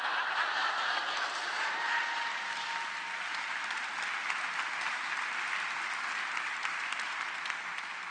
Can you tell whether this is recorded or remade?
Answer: recorded